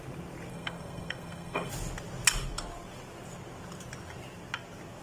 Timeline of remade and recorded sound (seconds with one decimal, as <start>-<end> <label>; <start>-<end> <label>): 0.0-0.5 recorded; 0.5-1.7 remade; 1.7-5.0 recorded